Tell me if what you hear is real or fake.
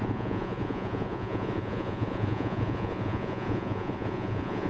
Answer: fake